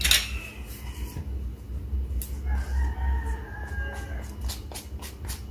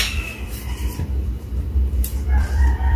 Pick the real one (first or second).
first